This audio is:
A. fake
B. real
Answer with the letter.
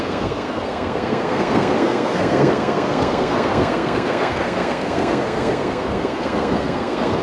A